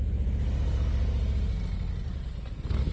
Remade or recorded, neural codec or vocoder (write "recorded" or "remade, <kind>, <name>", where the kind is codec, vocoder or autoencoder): recorded